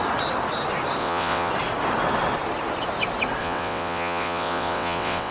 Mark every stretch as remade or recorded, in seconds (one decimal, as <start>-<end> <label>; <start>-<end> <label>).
0.0-1.0 recorded; 1.0-1.5 remade; 1.5-3.4 recorded; 3.4-5.3 remade